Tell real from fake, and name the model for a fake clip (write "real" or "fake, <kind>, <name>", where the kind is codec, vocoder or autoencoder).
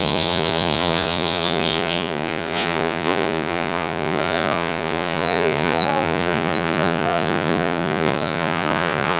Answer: fake, vocoder, Vocos